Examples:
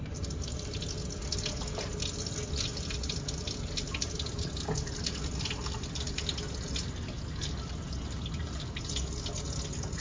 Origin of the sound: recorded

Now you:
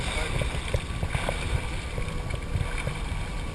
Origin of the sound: recorded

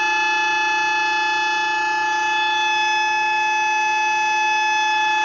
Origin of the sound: recorded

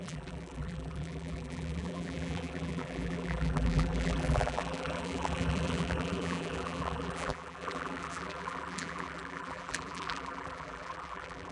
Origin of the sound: remade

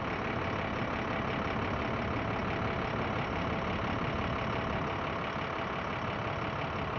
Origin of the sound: recorded